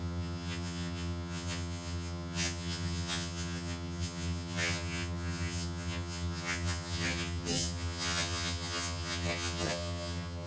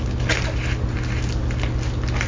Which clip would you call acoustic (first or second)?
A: second